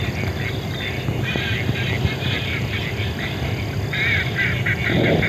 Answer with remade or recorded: recorded